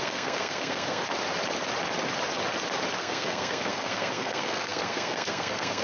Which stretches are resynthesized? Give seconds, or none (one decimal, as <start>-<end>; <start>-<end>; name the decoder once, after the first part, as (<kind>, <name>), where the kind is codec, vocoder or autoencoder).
0.0-1.0 (codec, SNAC); 3.0-5.8